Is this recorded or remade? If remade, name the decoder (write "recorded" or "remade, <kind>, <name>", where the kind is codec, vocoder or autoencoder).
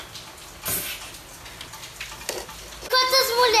recorded